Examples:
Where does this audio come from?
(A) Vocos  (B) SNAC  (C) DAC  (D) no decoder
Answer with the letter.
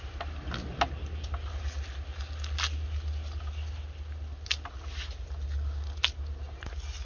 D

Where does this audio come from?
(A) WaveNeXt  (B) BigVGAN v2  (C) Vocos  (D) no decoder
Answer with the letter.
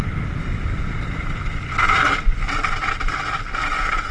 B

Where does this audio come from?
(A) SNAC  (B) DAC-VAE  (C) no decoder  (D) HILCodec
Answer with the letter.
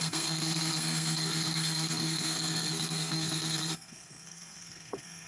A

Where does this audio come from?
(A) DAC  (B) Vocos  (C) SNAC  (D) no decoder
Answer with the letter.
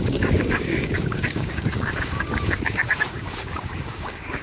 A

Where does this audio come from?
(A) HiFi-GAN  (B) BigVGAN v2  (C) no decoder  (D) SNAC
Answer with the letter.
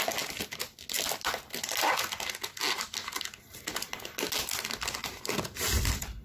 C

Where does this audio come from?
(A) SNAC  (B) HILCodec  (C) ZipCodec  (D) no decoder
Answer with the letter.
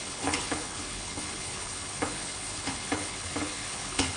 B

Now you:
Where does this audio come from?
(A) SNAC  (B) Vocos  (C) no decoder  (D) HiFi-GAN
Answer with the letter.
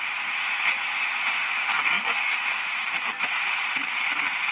C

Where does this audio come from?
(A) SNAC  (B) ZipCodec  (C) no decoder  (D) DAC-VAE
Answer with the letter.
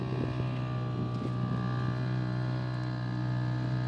C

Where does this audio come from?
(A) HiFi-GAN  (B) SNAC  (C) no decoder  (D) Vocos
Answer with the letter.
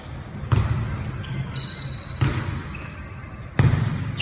C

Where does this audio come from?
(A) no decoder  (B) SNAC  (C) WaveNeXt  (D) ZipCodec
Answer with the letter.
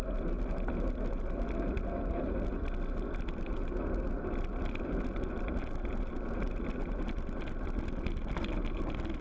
A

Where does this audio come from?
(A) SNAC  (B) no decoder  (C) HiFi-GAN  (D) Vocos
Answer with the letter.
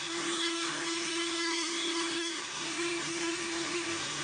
A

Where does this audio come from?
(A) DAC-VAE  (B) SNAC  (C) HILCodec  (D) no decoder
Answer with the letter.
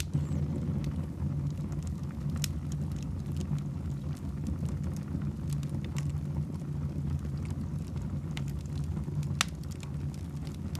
D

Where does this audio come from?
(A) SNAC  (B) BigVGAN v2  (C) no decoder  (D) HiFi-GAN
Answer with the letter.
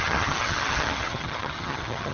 D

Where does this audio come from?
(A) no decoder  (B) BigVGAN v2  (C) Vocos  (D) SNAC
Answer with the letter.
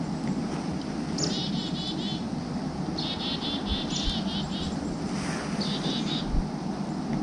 A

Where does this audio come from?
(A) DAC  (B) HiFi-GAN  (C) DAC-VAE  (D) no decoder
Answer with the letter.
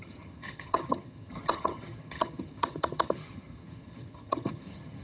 B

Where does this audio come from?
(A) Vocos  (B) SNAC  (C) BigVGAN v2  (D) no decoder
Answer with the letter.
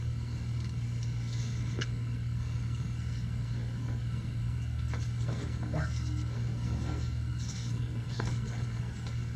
B